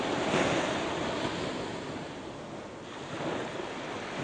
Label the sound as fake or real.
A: real